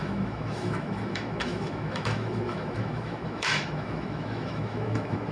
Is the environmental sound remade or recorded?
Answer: remade